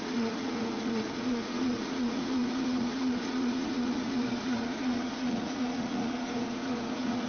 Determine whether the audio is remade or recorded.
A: remade